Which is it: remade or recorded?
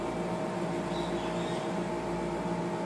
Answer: recorded